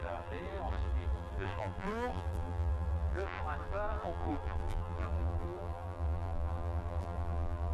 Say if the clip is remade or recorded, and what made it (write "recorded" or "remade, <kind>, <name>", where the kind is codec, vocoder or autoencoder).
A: remade, vocoder, BigVGAN v2